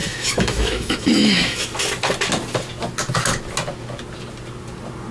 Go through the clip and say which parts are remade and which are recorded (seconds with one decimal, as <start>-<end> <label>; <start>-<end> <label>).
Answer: 0.0-1.6 remade; 1.6-5.1 recorded